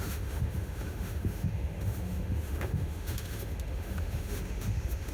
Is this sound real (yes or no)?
no